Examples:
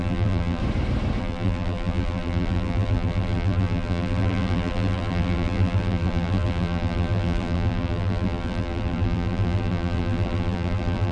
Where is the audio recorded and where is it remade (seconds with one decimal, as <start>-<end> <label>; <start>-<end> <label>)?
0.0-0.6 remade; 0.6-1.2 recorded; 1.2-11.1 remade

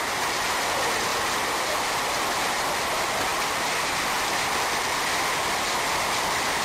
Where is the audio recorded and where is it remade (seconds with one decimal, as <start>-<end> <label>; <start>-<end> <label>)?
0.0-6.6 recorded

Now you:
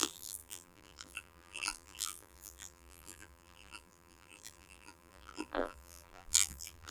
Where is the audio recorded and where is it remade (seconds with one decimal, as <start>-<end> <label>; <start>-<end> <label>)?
0.0-6.9 remade